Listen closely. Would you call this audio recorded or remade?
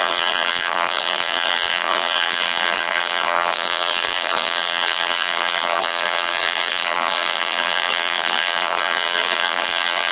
remade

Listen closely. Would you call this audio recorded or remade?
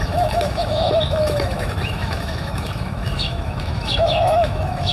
remade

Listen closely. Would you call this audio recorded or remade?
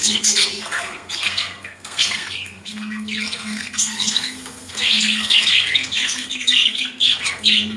remade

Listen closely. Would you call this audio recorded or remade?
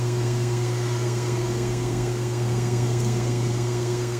remade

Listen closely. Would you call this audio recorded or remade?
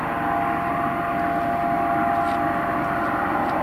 recorded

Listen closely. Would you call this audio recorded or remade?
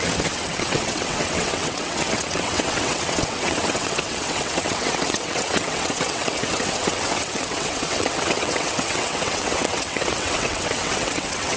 remade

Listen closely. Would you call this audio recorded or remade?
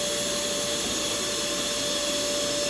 recorded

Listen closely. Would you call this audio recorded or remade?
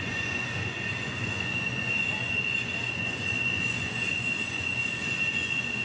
remade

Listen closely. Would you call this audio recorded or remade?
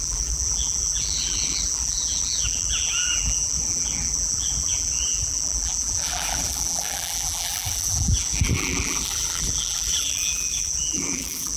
remade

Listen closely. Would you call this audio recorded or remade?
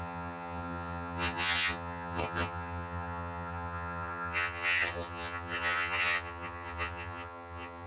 remade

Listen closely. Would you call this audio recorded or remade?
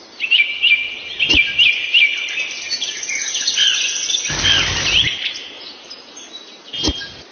recorded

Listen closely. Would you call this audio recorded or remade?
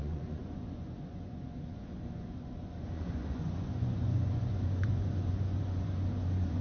remade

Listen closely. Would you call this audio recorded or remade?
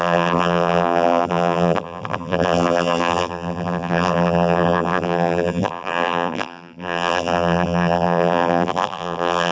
remade